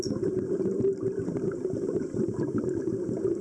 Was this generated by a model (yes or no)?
no